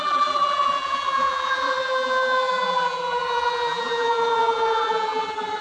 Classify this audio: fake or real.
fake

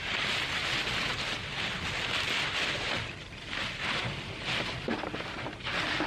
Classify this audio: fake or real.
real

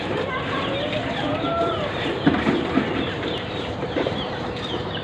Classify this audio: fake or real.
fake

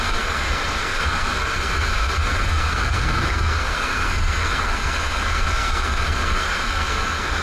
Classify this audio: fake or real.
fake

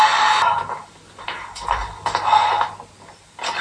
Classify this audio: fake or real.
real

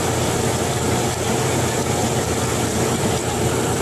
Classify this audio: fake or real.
fake